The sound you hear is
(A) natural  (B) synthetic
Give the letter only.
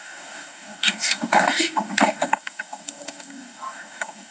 B